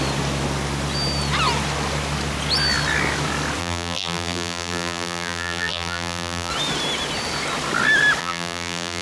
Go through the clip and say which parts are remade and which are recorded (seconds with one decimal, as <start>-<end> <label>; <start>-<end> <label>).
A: 0.0-3.6 recorded; 3.6-6.5 remade; 6.5-8.2 recorded; 8.2-9.0 remade